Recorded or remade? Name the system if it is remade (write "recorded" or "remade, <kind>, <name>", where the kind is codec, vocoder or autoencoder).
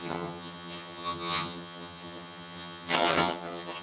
remade, vocoder, HiFi-GAN